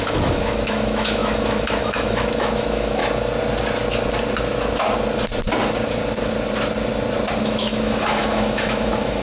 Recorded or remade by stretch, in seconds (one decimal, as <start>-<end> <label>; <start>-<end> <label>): 0.0-3.0 remade; 3.0-7.4 recorded; 7.4-9.2 remade